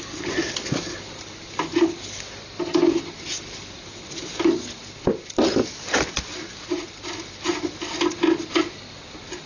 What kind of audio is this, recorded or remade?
recorded